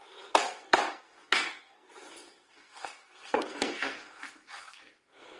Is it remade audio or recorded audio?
remade